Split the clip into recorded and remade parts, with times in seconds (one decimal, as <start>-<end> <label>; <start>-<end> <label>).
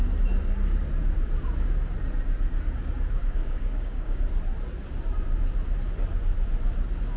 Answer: 0.0-3.2 recorded; 3.2-4.2 remade; 4.2-7.2 recorded